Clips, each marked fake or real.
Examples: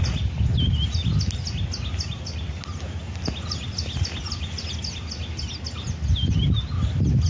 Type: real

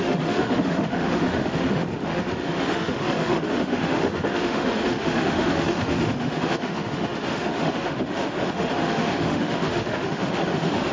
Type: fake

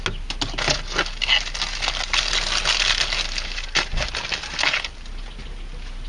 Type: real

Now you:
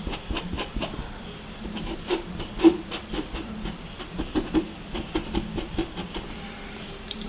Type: fake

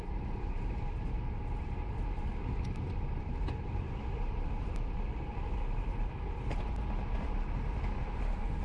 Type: real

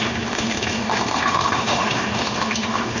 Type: fake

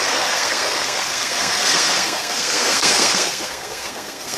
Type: fake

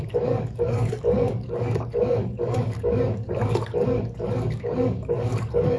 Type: fake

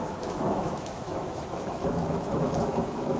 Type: fake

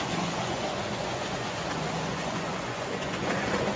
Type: fake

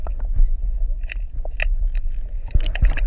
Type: real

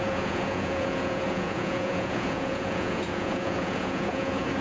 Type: fake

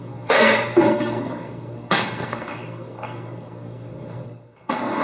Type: fake